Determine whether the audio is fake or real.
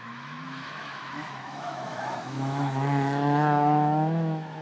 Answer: fake